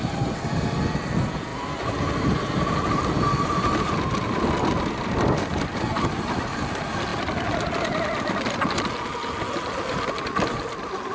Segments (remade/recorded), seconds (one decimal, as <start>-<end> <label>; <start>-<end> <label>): 0.0-11.1 recorded